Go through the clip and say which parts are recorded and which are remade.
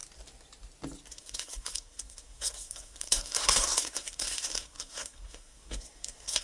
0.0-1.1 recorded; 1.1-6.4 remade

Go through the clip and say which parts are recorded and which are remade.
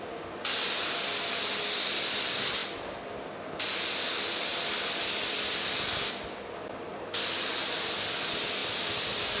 0.0-9.4 recorded